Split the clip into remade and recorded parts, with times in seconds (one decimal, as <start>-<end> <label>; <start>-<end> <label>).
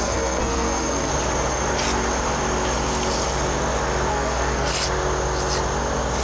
0.0-1.1 remade; 1.1-4.1 recorded; 4.1-4.7 remade; 4.7-6.2 recorded